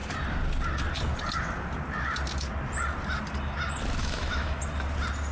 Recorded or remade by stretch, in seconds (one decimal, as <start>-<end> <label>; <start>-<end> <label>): 0.0-4.0 recorded; 4.0-4.6 remade; 4.6-5.3 recorded